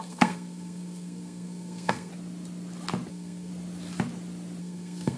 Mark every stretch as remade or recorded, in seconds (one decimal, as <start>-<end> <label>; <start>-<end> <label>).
0.0-2.1 remade; 2.1-3.1 recorded; 3.1-3.5 remade; 3.5-4.6 recorded; 4.6-5.2 remade